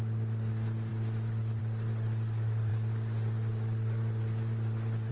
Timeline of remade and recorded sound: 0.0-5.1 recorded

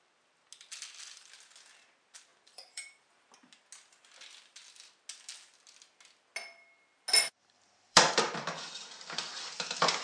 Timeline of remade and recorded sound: 0.0-2.3 recorded; 2.3-3.3 remade; 3.3-7.4 recorded; 7.4-8.6 remade; 8.6-10.0 recorded

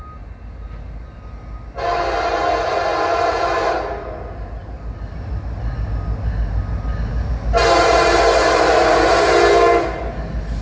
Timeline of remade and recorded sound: 0.0-10.6 recorded

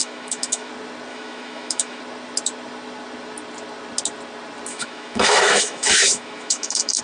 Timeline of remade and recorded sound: 0.0-0.7 remade; 0.7-1.1 recorded; 1.1-2.0 remade; 2.0-4.7 recorded; 4.7-7.0 remade